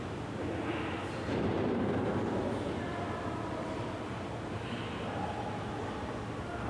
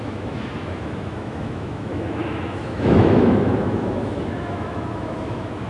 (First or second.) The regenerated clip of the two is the second